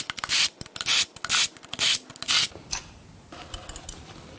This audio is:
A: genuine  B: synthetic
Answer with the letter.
A